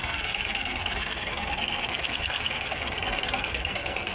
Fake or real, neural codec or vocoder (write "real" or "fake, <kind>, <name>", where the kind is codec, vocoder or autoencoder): fake, codec, SNAC